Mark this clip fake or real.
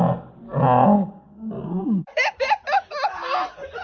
real